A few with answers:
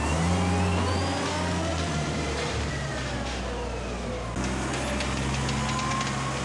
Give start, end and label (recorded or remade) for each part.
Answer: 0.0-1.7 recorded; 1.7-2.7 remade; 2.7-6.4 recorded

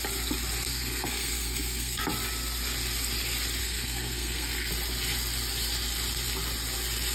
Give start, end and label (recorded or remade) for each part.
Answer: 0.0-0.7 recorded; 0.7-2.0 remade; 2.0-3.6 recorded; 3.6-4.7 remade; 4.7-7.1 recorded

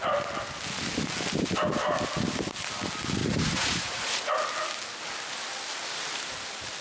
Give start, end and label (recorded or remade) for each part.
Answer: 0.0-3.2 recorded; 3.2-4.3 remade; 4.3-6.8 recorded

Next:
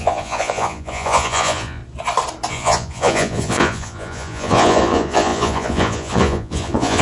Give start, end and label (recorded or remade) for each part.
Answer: 0.0-1.8 remade; 1.8-2.5 recorded; 2.5-7.0 remade